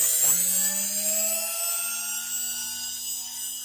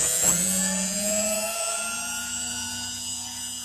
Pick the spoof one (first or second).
second